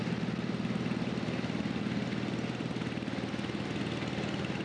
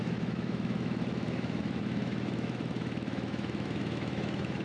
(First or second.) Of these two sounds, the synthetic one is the second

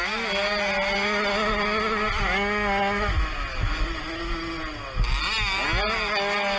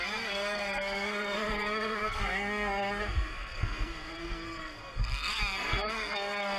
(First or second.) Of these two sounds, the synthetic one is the second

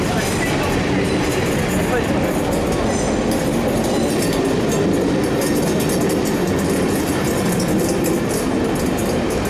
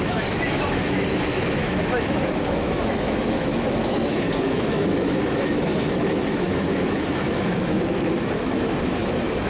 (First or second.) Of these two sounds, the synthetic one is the second